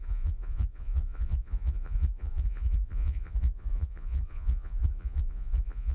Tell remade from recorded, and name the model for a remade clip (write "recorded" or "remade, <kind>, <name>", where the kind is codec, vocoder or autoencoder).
remade, vocoder, Vocos